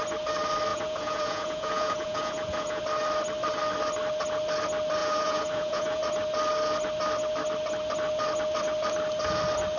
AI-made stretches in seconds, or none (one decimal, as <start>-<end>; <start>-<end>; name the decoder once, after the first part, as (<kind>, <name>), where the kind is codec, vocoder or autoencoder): 0.7-2.8 (vocoder, Vocos); 5.0-6.0